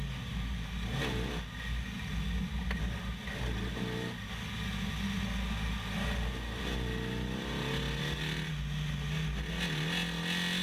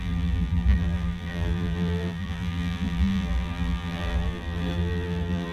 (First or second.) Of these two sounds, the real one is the first